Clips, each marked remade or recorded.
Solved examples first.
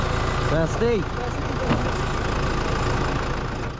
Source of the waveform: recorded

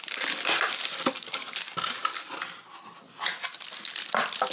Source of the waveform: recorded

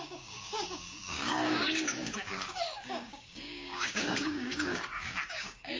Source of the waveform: remade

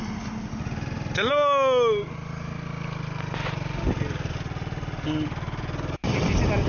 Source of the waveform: recorded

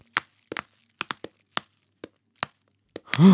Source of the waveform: recorded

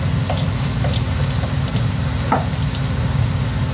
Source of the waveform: recorded